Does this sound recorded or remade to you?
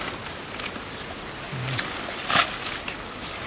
recorded